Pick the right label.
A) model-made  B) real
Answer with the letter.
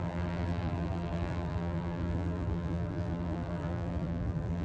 A